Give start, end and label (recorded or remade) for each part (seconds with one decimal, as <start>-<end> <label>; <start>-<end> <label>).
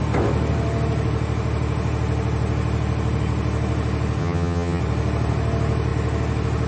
0.0-4.2 recorded; 4.2-4.8 remade; 4.8-6.7 recorded